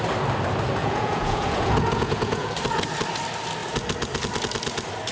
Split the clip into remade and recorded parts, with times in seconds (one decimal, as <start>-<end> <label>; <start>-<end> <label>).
0.0-0.8 recorded; 0.8-2.5 remade; 2.5-5.1 recorded

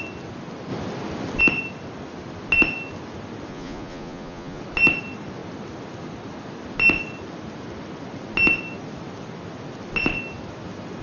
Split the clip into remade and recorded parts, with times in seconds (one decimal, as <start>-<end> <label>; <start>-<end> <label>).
0.0-3.5 recorded; 3.5-4.6 remade; 4.6-11.0 recorded

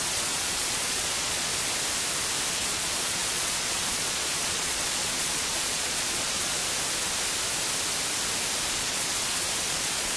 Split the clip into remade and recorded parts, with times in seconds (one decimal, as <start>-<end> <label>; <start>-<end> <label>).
0.0-1.5 remade; 1.5-2.5 recorded; 2.5-6.6 remade; 6.6-8.7 recorded; 8.7-10.2 remade